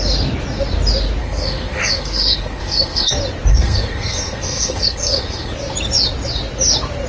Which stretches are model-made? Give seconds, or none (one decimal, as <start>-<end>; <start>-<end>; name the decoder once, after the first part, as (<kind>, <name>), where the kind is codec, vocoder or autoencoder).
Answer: 1.2-3.1 (codec, SNAC); 3.5-5.5